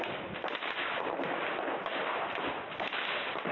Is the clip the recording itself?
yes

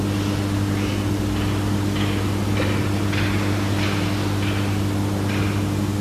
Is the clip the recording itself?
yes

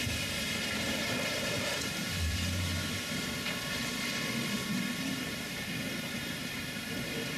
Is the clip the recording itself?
no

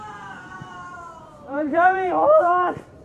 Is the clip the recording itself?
no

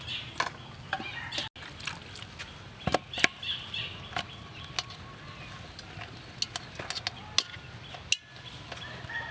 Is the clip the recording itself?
yes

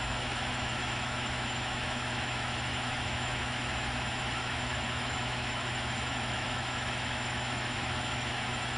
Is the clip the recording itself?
no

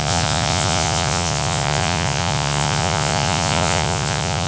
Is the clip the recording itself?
no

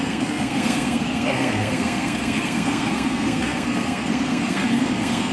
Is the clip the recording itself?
no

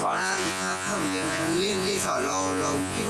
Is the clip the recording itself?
no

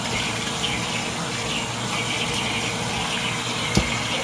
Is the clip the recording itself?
yes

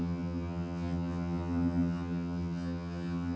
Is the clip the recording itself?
no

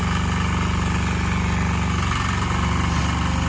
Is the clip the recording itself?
yes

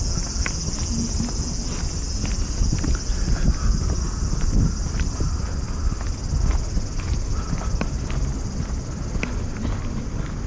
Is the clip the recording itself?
yes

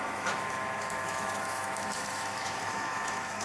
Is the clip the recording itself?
no